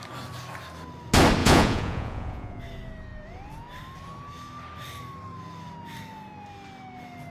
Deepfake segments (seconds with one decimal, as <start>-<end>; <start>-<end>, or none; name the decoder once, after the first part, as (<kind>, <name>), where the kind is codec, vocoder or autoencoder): 1.4-2.6 (vocoder, Vocos)